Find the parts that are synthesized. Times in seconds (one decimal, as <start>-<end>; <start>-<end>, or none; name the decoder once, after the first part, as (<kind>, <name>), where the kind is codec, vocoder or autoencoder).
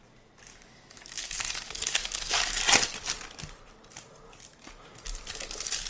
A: 0.5-2.6 (codec, DAC)